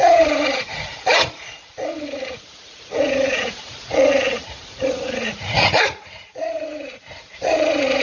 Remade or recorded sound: remade